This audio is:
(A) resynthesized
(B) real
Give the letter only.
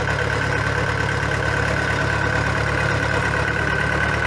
B